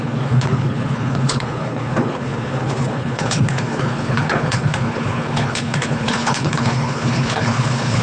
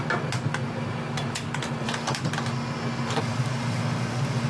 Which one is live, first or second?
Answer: second